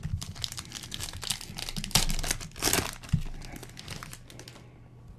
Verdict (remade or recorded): recorded